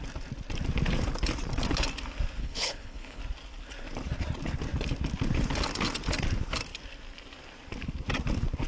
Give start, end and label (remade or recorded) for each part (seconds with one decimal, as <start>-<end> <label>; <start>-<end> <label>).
0.0-2.4 recorded; 2.4-3.2 remade; 3.2-8.7 recorded